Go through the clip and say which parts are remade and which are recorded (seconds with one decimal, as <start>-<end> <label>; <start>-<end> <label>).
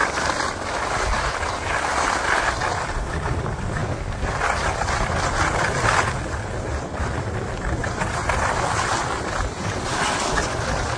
0.0-11.0 recorded